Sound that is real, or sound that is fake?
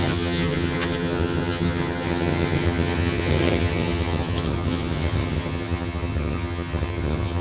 fake